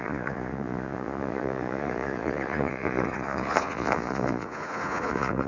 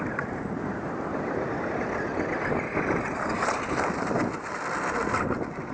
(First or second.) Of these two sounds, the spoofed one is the first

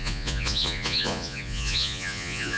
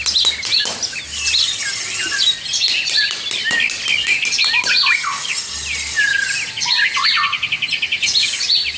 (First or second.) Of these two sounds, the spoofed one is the first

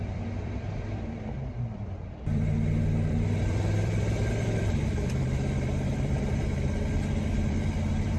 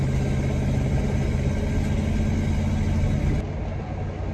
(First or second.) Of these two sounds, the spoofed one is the first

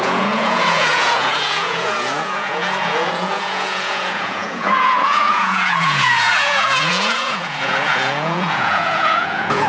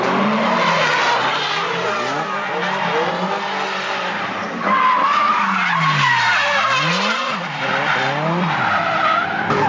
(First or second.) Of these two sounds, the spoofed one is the first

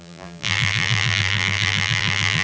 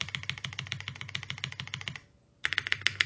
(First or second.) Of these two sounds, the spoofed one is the first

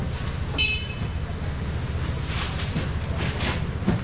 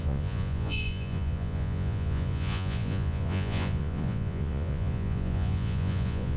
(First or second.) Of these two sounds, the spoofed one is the second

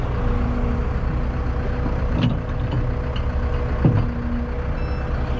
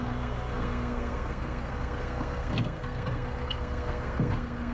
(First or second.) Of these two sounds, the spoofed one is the second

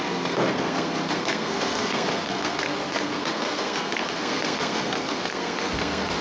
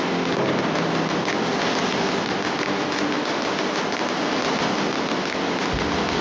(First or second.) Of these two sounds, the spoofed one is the first